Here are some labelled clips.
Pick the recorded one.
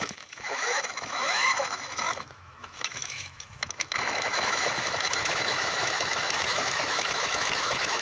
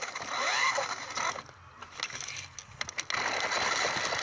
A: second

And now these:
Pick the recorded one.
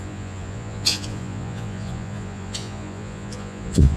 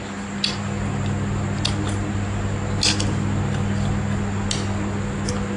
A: second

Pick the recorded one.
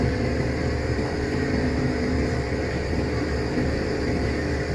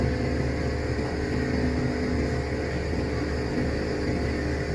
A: second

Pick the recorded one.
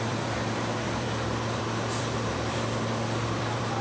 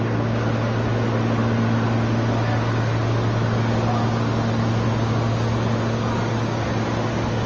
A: second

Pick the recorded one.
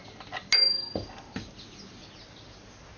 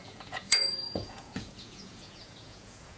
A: first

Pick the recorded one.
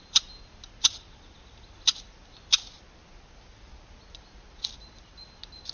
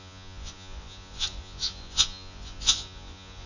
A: first